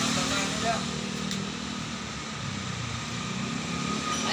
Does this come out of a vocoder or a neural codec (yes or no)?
no